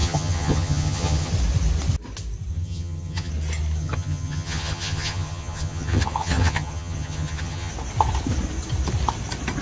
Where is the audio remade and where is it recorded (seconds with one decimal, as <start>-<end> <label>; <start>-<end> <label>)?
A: 0.0-1.3 remade; 1.3-2.5 recorded; 2.5-3.3 remade; 3.3-3.8 recorded; 3.8-7.7 remade; 7.7-9.6 recorded